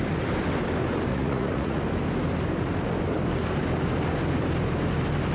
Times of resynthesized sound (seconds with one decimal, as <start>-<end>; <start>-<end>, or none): 1.1-1.8